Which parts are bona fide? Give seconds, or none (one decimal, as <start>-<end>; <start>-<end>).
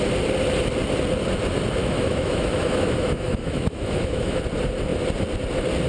0.0-1.8; 4.4-5.9